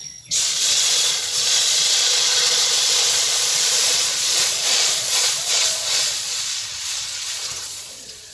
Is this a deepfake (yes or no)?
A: yes